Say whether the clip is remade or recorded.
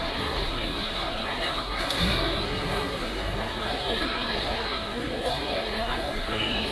remade